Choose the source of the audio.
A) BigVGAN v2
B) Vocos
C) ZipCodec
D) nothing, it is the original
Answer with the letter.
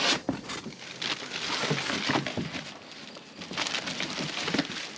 D